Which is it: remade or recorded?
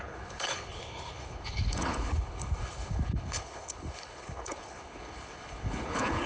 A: remade